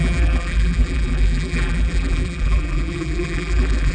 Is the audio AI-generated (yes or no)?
yes